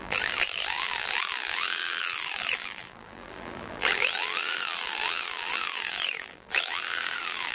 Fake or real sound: fake